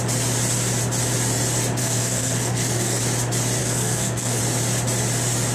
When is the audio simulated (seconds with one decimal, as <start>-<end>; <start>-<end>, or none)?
1.8-3.0; 3.6-4.4

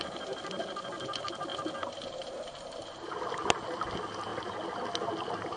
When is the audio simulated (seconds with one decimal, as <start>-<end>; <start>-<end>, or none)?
none